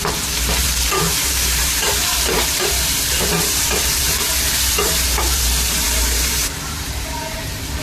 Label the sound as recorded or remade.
remade